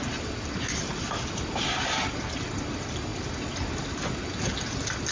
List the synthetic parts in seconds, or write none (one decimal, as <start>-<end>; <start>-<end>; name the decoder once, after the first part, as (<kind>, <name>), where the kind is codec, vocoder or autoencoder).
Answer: none